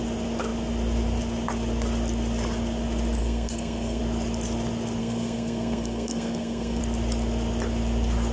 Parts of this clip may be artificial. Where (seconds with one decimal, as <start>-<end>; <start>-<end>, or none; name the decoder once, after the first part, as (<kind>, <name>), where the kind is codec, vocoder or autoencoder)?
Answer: 3.2-4.0 (codec, SNAC); 5.0-6.8